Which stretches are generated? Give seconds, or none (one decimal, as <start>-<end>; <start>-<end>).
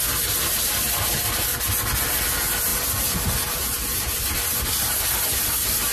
2.7-4.6